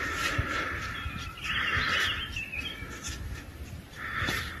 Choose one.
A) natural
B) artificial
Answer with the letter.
A